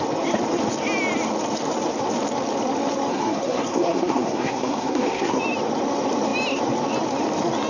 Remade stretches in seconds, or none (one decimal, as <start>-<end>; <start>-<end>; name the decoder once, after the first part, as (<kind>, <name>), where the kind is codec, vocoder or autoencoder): 3.1-5.4 (codec, SNAC)